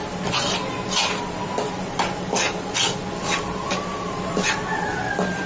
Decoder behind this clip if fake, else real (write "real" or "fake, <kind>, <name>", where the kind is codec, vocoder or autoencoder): real